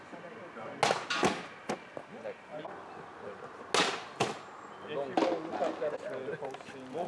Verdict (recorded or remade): recorded